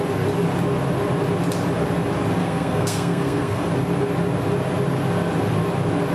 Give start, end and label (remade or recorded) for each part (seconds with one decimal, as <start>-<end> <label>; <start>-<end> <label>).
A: 0.0-2.4 recorded; 2.4-3.7 remade; 3.7-6.1 recorded